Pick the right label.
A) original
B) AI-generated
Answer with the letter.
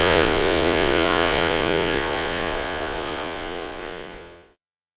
B